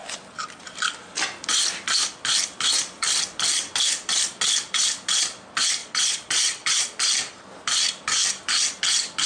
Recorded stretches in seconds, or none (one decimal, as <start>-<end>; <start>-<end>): 0.0-5.8; 6.8-9.3